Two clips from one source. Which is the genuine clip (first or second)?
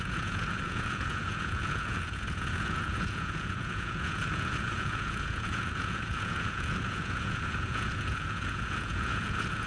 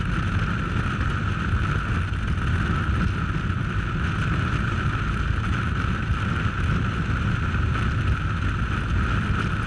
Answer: second